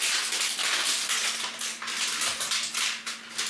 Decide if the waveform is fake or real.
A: real